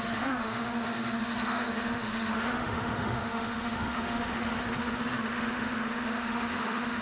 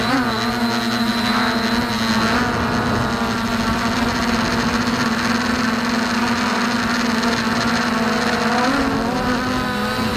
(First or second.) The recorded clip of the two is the second